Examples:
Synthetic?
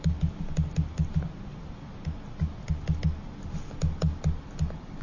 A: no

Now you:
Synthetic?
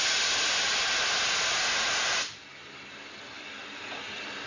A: yes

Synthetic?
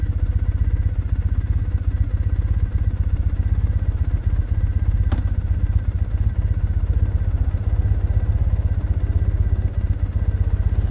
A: no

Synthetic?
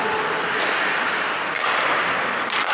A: no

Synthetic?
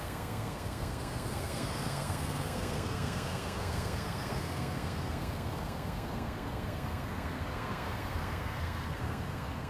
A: yes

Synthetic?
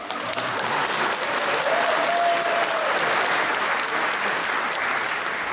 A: no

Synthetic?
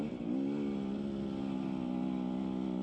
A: no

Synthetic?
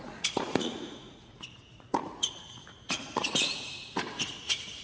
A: yes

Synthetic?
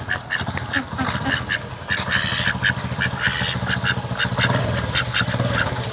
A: no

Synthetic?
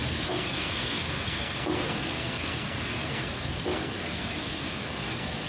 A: yes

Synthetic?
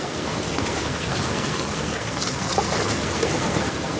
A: yes